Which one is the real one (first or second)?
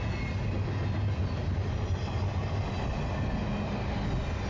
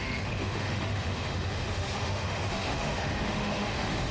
first